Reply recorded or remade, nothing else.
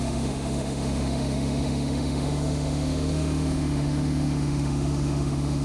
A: remade